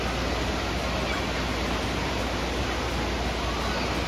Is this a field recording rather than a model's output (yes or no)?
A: yes